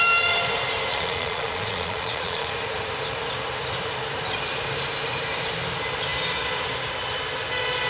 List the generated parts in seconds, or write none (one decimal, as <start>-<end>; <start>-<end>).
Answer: 0.9-2.5